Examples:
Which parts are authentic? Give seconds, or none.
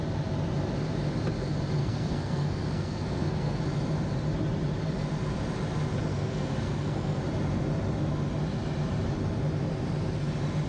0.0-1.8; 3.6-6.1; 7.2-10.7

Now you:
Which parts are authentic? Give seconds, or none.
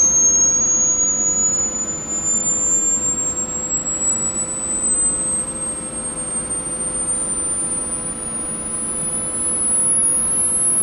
0.0-10.8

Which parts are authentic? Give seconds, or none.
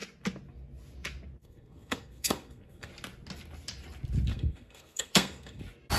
0.0-1.4; 2.9-4.3; 5.6-6.0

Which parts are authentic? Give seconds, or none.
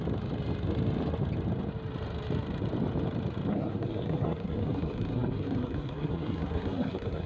0.0-3.5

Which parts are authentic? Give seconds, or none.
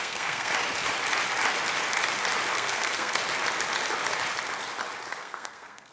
0.5-2.5; 3.2-5.2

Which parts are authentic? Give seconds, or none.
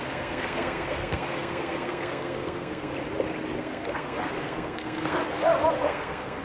2.9-3.6; 5.2-5.7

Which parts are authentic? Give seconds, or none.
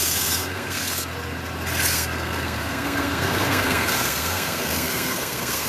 1.1-1.9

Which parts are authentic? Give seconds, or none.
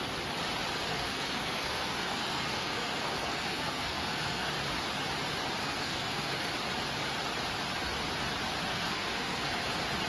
0.0-0.9; 4.5-5.6; 6.5-8.7; 9.5-10.1